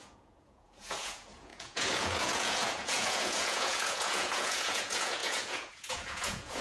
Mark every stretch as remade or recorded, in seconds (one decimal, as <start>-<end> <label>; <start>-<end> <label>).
0.0-6.6 remade